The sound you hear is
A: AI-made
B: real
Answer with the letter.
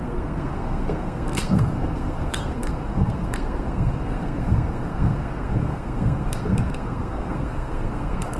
A